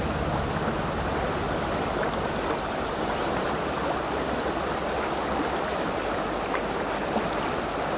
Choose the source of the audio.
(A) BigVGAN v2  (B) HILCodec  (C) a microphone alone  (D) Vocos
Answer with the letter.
C